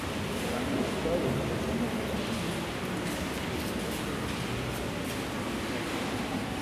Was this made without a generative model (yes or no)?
yes